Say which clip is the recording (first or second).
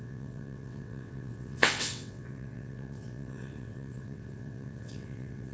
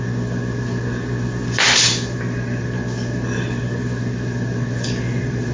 second